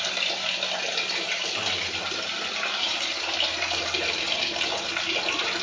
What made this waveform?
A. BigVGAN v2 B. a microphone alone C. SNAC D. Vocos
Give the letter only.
B